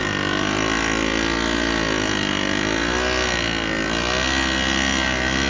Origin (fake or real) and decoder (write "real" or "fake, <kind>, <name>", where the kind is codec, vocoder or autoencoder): real